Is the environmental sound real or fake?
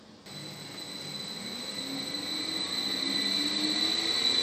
real